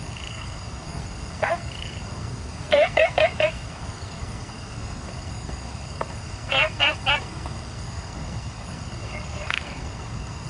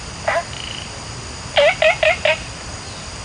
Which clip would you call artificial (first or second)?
first